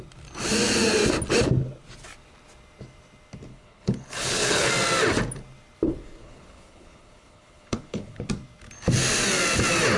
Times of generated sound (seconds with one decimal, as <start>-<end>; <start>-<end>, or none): 3.5-4.7; 6.2-8.3